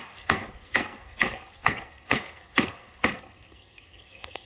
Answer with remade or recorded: remade